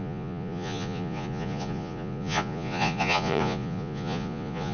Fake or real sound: fake